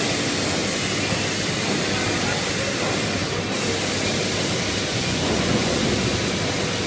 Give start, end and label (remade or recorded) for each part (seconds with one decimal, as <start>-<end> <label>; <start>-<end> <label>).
0.0-4.9 recorded; 4.9-5.8 remade; 5.8-6.9 recorded